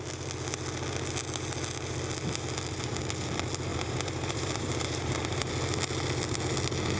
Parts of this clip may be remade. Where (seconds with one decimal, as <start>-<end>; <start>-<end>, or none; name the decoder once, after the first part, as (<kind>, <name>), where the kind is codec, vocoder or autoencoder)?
3.7-5.5 (vocoder, BigVGAN v2)